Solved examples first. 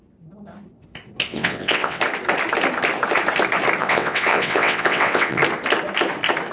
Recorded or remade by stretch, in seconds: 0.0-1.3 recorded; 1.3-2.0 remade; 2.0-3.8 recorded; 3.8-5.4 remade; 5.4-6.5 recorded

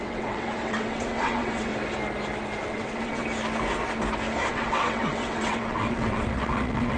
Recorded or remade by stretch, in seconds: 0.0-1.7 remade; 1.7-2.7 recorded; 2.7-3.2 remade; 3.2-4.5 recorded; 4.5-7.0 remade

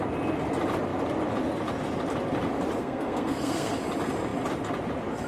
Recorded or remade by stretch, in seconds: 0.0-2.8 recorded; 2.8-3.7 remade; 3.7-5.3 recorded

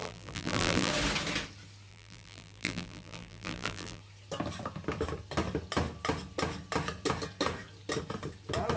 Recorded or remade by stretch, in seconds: 0.0-0.9 remade; 0.9-1.9 recorded; 1.9-4.0 remade; 4.0-8.8 recorded

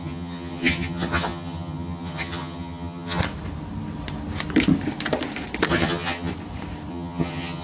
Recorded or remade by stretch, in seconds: 0.0-3.2 remade; 3.2-5.7 recorded; 5.7-6.3 remade; 6.3-6.9 recorded; 6.9-7.6 remade

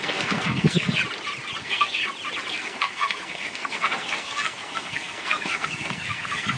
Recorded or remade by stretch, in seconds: 0.0-1.0 remade; 1.0-1.6 recorded; 1.6-2.0 remade; 2.0-2.5 recorded; 2.5-6.6 remade

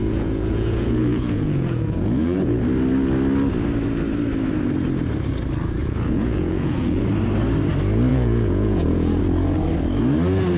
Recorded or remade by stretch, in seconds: 0.0-2.6 remade; 2.6-5.8 recorded; 5.8-7.0 remade; 7.0-8.1 recorded; 8.1-9.2 remade; 9.2-10.6 recorded

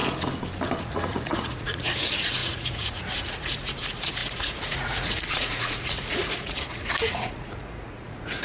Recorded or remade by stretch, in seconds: 0.0-0.8 recorded; 0.8-8.4 remade